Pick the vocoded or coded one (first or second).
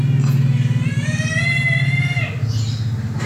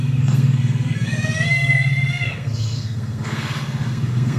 second